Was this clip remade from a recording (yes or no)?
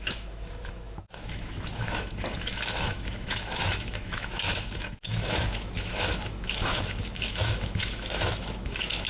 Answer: yes